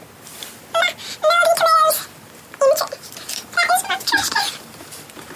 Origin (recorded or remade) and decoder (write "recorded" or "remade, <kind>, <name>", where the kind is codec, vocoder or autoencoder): recorded